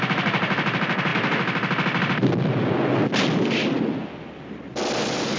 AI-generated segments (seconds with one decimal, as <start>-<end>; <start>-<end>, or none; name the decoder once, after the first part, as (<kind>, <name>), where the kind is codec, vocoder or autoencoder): none